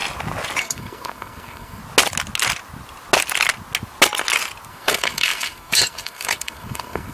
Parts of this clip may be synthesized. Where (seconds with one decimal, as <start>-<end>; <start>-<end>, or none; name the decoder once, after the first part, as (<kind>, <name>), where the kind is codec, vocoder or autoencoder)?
0.6-1.8 (codec, SNAC); 4.7-7.1